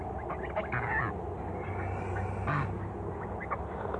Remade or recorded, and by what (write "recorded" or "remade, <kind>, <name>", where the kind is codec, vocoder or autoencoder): recorded